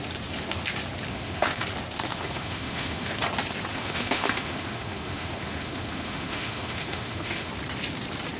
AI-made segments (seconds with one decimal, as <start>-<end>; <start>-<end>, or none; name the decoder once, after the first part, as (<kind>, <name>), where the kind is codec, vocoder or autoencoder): 1.1-1.6 (autoencoder, DAC-VAE); 2.1-3.2; 3.7-7.5